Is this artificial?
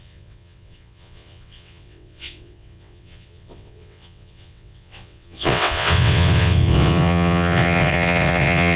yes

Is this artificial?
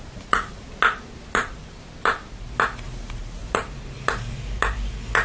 no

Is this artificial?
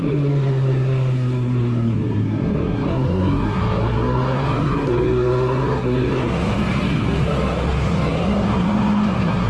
yes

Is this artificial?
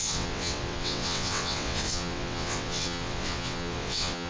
yes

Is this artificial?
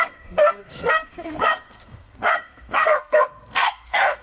yes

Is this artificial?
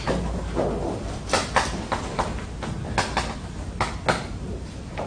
no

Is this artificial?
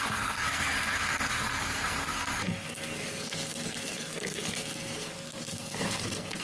yes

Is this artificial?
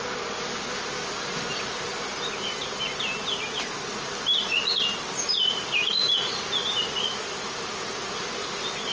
no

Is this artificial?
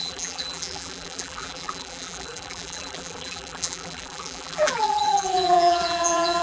yes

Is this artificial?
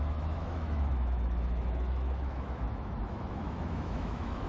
yes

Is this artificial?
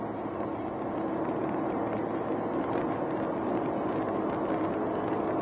no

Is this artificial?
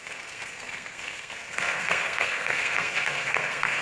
yes